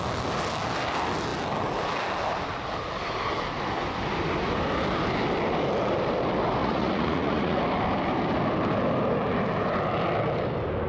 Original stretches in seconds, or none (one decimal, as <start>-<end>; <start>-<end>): 0.0-6.6; 7.6-10.9